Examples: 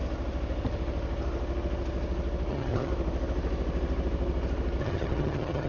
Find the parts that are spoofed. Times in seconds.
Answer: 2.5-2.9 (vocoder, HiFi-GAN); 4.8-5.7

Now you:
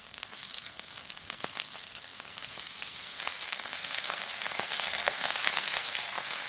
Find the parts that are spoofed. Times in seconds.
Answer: 0.0-6.5 (codec, SNAC)

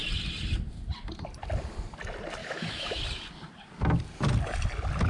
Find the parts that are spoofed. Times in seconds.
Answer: 2.4-3.0 (autoencoder, DAC-VAE)

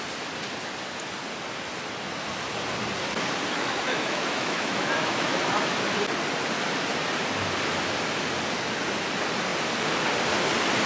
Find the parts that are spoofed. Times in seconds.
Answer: 3.5-5.6 (autoencoder, DAC-VAE)